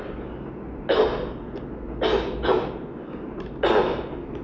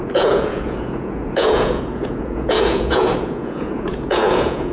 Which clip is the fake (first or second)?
second